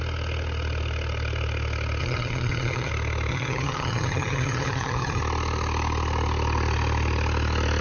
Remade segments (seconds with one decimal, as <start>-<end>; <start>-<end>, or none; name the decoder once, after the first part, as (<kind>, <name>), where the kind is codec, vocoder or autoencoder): 2.0-2.9 (vocoder, HiFi-GAN); 3.3-5.2